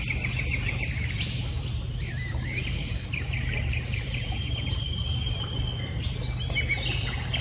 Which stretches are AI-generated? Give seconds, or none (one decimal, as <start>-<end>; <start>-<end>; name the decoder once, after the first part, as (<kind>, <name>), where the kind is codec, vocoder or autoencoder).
1.5-5.6 (vocoder, BigVGAN v2)